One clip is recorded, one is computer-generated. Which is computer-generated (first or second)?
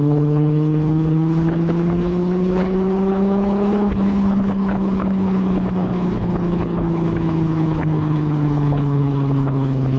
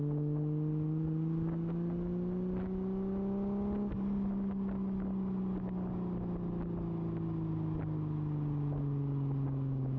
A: first